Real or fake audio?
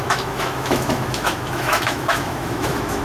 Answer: fake